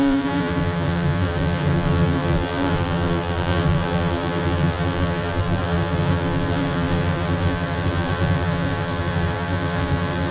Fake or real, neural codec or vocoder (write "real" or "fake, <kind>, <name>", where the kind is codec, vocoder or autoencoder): fake, vocoder, BigVGAN v2